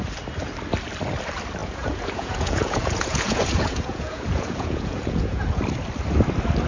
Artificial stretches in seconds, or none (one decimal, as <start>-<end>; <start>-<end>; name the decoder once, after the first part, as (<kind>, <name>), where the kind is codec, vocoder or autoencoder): 1.6-5.6 (vocoder, Vocos)